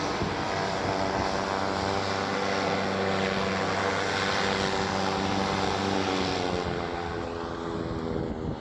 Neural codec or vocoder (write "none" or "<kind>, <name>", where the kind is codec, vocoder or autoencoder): none